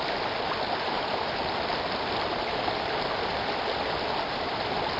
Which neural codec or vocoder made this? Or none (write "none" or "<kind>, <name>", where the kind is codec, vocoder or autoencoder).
none